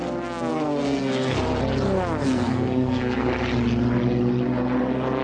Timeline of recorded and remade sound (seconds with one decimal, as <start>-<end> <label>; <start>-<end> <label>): 0.0-0.5 recorded; 0.5-1.4 remade; 1.4-2.2 recorded; 2.2-3.3 remade; 3.3-5.2 recorded